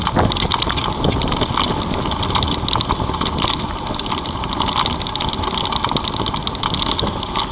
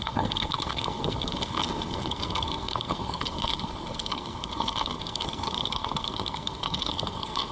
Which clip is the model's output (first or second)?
second